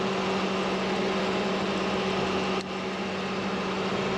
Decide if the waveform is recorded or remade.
recorded